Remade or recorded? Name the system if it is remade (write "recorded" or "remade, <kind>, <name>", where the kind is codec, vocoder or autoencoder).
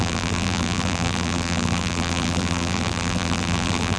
remade, vocoder, BigVGAN v2